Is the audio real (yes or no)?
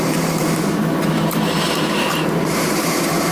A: no